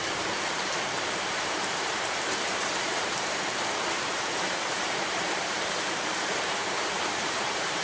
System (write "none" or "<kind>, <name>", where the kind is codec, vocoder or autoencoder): vocoder, BigVGAN v2